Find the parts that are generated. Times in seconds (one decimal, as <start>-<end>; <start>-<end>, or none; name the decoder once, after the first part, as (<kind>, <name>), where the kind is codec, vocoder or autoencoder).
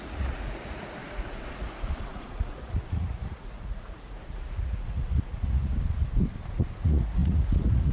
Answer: 0.0-5.7 (vocoder, Vocos); 6.5-7.9